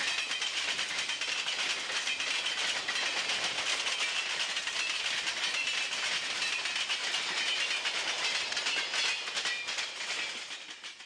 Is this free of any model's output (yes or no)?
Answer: yes